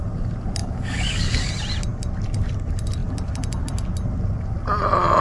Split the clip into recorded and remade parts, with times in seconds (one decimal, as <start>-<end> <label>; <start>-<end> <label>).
0.0-0.6 recorded; 0.6-1.5 remade; 1.5-5.2 recorded